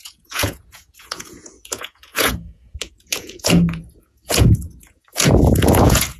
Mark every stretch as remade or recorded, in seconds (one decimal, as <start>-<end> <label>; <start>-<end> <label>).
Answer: 0.0-6.2 remade